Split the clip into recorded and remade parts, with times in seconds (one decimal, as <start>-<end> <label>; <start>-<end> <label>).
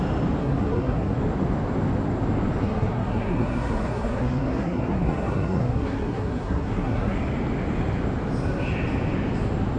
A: 0.0-0.4 recorded; 0.4-1.2 remade; 1.2-2.6 recorded; 2.6-7.2 remade; 7.2-9.8 recorded